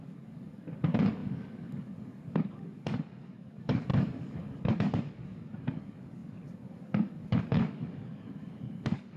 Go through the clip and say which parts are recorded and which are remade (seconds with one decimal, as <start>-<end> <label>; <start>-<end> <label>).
0.0-9.2 remade